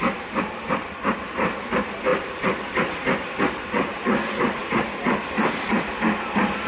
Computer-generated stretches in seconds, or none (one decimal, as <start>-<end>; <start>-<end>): 0.0-4.6; 5.2-6.7